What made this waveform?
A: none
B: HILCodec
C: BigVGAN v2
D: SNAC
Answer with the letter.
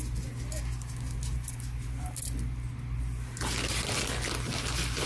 A